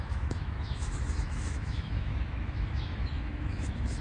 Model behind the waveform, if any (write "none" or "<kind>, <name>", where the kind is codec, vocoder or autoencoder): autoencoder, DAC-VAE